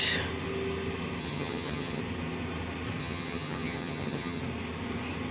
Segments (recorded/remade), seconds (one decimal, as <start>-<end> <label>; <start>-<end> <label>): 0.0-1.2 recorded; 1.2-2.0 remade; 2.0-3.0 recorded; 3.0-4.4 remade; 4.4-5.3 recorded